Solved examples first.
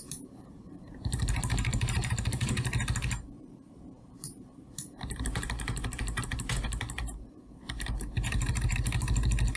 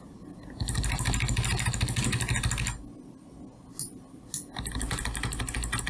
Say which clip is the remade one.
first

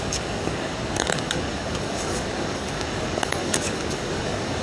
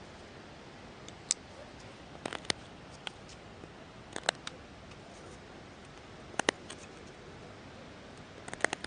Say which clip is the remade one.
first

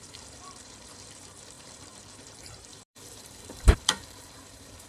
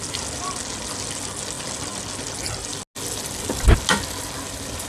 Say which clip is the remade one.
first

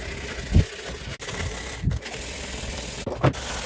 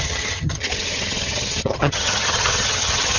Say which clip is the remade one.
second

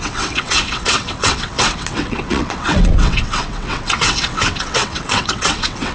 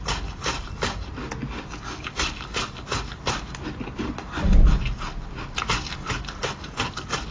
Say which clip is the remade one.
first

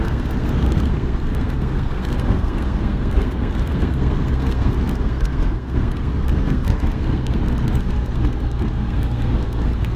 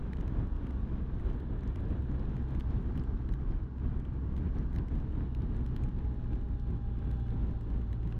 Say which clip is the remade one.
first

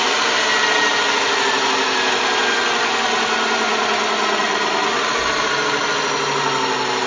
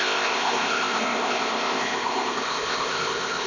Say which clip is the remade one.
second